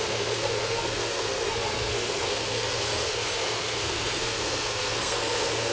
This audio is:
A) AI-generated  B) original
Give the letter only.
A